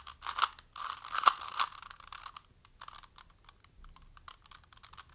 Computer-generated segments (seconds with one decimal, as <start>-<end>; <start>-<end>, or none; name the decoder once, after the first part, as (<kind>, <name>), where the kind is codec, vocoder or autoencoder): none